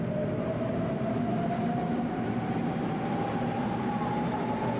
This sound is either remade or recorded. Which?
recorded